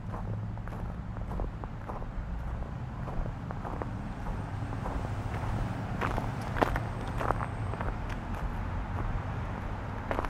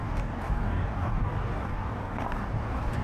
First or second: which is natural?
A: first